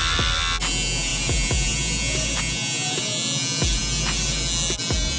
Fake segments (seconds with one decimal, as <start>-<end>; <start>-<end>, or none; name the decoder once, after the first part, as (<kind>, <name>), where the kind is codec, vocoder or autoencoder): none